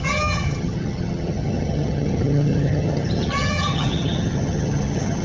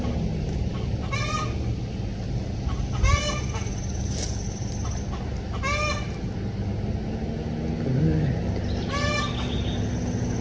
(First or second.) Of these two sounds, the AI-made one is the first